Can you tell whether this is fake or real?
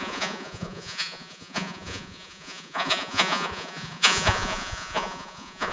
fake